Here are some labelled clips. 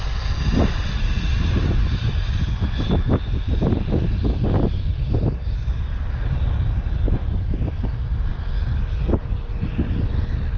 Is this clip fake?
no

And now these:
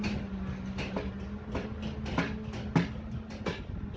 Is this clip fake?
no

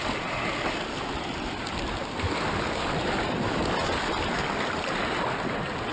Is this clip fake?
no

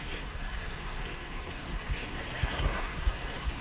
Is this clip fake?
yes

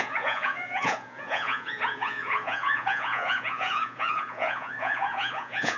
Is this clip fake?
yes